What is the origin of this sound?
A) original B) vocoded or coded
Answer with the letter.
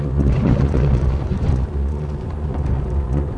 B